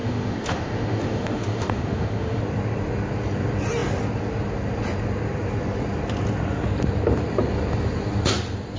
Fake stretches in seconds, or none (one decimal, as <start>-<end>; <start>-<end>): 0.0-2.4